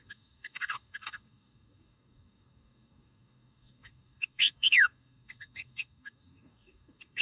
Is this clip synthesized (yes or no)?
yes